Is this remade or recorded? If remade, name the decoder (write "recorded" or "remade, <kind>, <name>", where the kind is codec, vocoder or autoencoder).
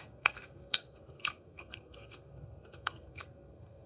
remade, codec, SNAC